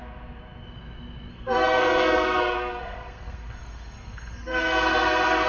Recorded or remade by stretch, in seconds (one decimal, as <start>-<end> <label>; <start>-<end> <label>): 0.0-1.3 recorded; 1.3-5.5 remade